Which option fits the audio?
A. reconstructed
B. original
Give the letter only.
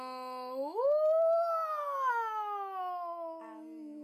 B